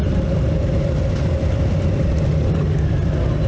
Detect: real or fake real